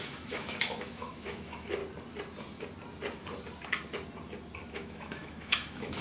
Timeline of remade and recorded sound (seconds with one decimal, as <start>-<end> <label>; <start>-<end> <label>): 0.0-1.8 remade; 1.8-4.7 recorded; 4.7-6.0 remade